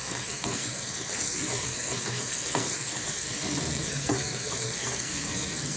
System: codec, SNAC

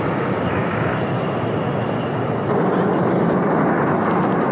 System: none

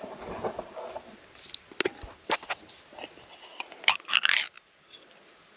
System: none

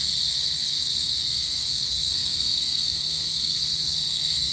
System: codec, SNAC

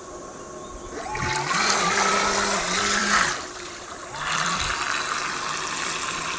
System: vocoder, BigVGAN v2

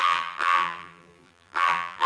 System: vocoder, BigVGAN v2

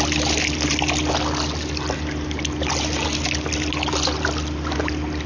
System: none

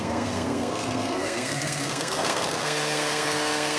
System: codec, SNAC